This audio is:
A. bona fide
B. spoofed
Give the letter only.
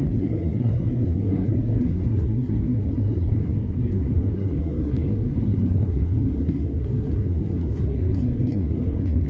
B